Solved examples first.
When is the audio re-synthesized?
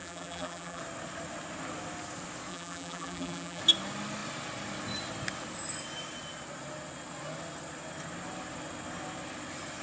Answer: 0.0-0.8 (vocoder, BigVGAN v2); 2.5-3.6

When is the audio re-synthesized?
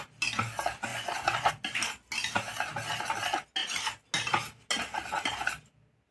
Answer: 0.9-1.5 (vocoder, Vocos)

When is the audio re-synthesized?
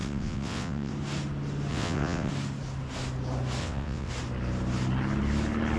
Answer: 0.0-0.9 (vocoder, WaveNeXt); 1.7-2.3; 3.6-4.1